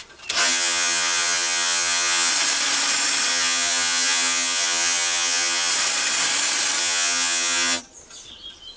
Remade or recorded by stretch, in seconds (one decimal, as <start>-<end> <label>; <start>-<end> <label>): 0.0-0.4 recorded; 0.4-2.3 remade; 2.3-3.3 recorded; 3.3-5.7 remade; 5.7-6.8 recorded; 6.8-7.8 remade; 7.8-8.8 recorded